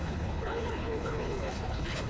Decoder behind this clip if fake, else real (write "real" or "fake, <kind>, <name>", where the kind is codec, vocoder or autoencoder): fake, codec, HILCodec